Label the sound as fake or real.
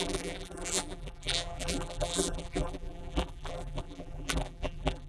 fake